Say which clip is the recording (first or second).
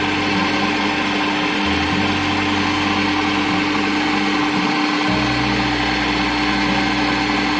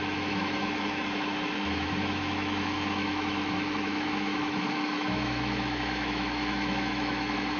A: first